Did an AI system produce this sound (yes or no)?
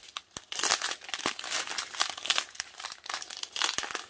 no